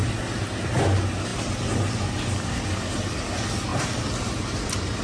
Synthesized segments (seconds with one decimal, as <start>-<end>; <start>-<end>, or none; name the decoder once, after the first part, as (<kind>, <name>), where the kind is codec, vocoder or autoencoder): none